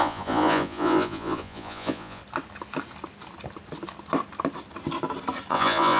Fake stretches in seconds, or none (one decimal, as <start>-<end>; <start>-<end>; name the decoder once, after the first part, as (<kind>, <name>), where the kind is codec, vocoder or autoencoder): 0.0-2.2 (vocoder, Vocos); 5.5-6.0